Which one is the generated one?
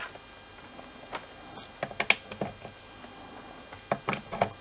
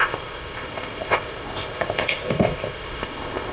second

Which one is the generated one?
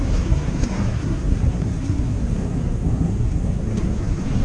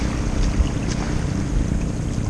first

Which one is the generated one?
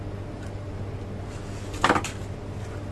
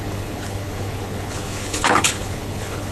second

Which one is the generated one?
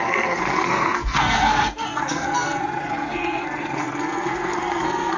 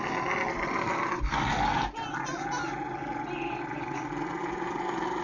first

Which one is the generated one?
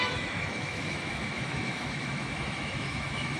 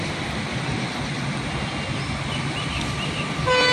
first